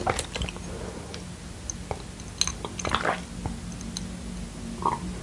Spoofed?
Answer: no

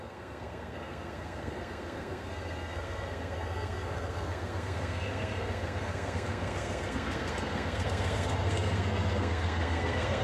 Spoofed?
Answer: yes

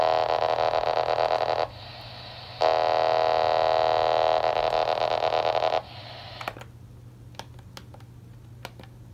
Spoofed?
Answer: no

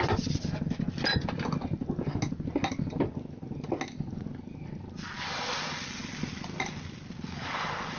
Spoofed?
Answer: no